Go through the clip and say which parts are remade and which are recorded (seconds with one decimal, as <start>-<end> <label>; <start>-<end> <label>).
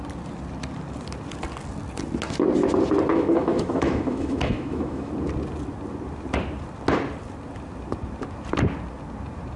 0.0-3.1 recorded; 3.1-5.1 remade; 5.1-9.6 recorded